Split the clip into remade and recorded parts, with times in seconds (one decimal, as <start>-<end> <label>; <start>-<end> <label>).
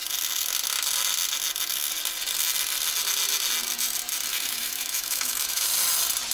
0.0-4.3 recorded; 4.3-5.6 remade; 5.6-6.3 recorded